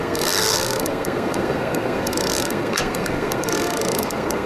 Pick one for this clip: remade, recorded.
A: remade